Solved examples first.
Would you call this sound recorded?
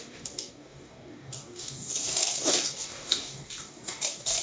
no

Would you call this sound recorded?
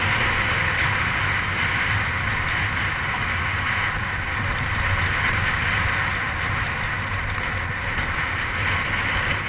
yes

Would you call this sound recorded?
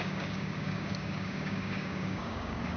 no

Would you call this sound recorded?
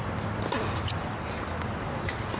yes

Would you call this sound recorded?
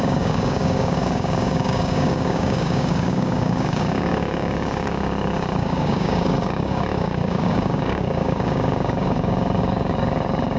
no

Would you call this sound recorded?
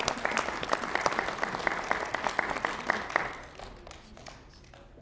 yes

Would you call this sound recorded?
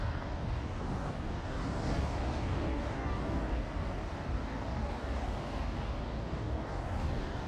no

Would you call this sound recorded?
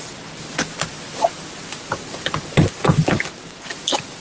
yes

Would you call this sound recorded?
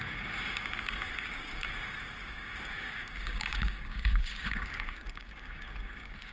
no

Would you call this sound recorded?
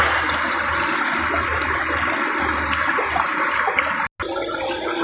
yes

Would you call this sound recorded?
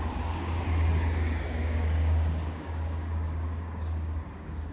no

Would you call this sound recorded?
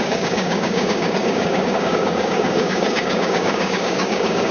no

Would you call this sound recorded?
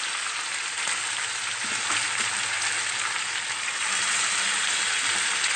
yes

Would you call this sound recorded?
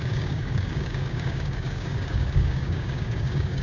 no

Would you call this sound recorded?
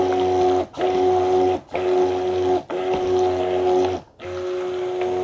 yes